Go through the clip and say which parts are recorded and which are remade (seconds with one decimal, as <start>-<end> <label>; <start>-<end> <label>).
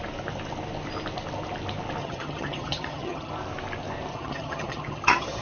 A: 0.0-2.0 recorded; 2.0-3.3 remade; 3.3-4.1 recorded; 4.1-5.4 remade